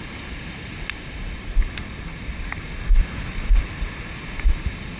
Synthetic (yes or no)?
no